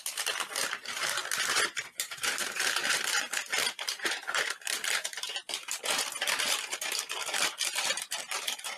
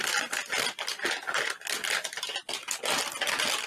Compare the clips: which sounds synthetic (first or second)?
first